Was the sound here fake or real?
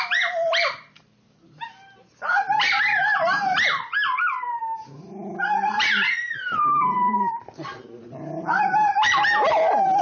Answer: fake